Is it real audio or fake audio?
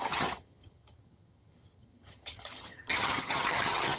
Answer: fake